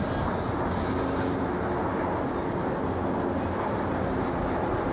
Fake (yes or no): no